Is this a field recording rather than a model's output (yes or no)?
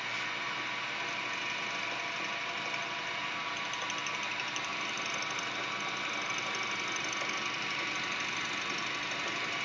yes